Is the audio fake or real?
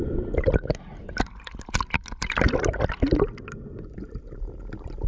real